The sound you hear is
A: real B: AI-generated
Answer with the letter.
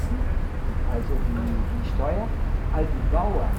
A